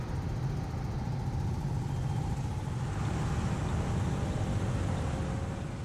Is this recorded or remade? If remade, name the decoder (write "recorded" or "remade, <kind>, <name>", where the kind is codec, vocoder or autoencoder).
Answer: recorded